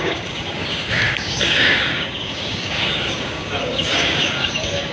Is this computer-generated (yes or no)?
yes